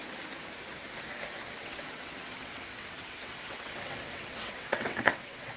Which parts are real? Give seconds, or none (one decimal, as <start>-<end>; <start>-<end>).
0.0-1.6